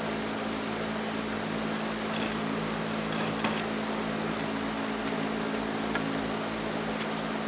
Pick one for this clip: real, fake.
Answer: real